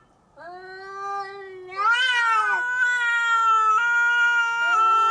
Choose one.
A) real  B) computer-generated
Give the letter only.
A